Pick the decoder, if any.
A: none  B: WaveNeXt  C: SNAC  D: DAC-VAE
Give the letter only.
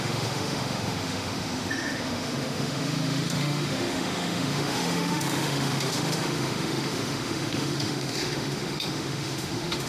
D